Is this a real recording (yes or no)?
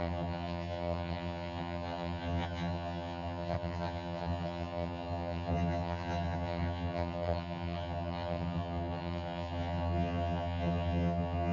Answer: no